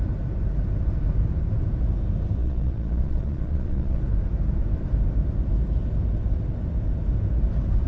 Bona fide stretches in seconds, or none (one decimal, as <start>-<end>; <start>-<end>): 0.0-2.4; 4.0-7.9